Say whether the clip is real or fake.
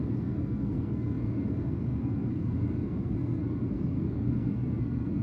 fake